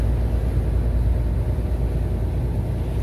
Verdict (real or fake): real